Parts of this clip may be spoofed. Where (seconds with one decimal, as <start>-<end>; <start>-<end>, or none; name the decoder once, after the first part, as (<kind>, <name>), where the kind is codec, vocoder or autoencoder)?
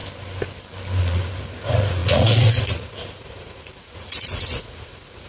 1.0-5.3 (vocoder, Vocos)